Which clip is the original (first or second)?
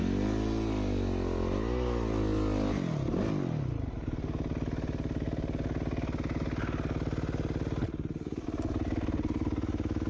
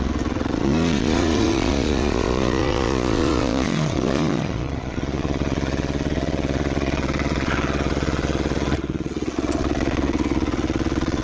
first